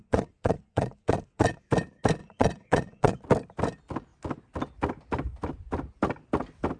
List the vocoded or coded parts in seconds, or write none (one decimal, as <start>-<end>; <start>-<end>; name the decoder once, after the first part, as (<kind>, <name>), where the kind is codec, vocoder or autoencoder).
0.0-1.7 (vocoder, Vocos); 2.2-3.2

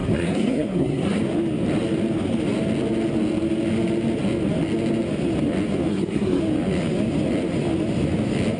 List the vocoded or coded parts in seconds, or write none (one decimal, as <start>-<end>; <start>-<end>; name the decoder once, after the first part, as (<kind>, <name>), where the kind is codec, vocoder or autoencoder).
0.0-1.2 (codec, SNAC); 5.9-6.4

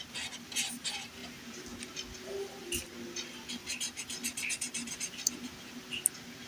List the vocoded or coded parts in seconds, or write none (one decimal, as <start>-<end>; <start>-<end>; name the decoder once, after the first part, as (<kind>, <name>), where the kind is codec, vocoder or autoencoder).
3.6-6.1 (vocoder, BigVGAN v2)

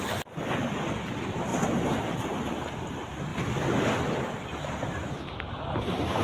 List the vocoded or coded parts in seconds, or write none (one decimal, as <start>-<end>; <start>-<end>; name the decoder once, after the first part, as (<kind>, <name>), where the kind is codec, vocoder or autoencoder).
none

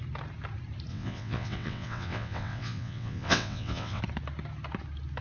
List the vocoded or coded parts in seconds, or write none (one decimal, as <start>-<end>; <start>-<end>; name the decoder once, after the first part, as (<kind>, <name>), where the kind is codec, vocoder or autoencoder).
0.9-4.0 (vocoder, WaveNeXt)